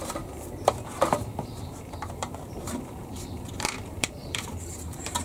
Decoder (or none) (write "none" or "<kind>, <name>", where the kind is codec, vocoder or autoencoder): vocoder, BigVGAN v2